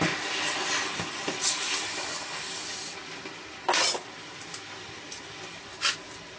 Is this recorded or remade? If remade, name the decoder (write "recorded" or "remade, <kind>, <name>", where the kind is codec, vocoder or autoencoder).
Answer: recorded